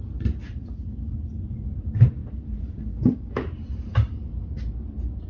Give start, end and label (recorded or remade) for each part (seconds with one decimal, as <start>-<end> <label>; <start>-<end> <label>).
0.0-0.5 recorded; 0.5-1.3 remade; 1.3-5.3 recorded